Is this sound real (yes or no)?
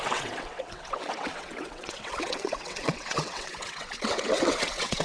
no